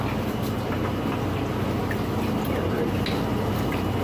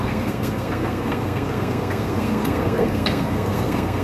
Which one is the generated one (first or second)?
second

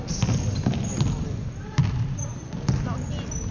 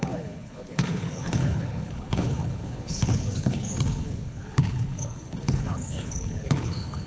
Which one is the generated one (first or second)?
second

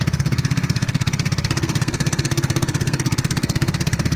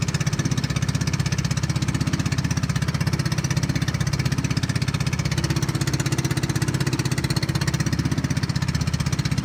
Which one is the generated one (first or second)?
first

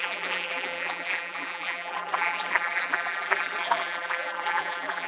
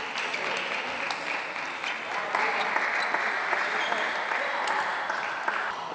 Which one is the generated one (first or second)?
first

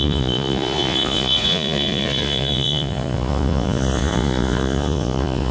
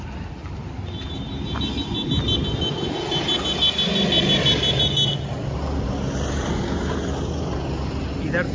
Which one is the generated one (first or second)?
first